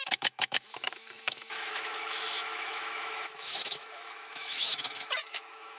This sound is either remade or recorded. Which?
remade